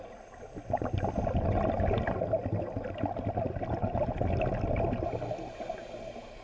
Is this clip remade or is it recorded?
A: recorded